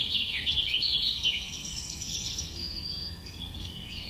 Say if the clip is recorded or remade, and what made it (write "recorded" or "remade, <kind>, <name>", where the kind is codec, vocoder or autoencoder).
remade, codec, SNAC